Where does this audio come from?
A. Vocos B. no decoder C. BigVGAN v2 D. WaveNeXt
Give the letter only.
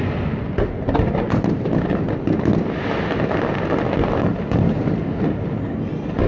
B